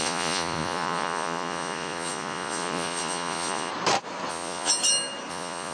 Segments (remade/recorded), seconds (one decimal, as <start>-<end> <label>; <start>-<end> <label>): 0.0-3.7 remade; 3.7-4.3 recorded; 4.3-4.7 remade; 4.7-5.3 recorded; 5.3-5.7 remade